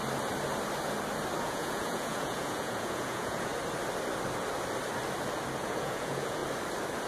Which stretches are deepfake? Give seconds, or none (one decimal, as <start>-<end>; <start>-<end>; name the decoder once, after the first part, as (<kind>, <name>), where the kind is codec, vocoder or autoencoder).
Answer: 1.4-3.5 (vocoder, Vocos); 5.6-6.4